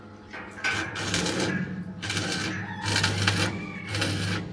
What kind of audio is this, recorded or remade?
recorded